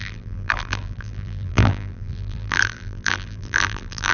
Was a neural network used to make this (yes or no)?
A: yes